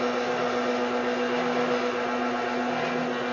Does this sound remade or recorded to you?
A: recorded